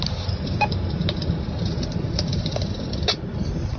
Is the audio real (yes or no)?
yes